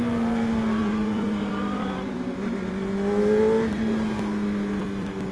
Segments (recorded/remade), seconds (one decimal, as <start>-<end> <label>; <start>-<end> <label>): 0.0-0.8 recorded; 0.8-2.7 remade; 2.7-5.3 recorded